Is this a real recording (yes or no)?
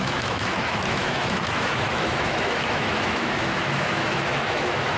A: no